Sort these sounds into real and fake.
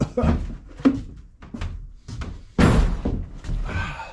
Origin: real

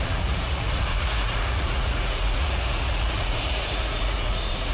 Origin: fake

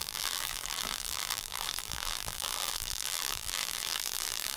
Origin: fake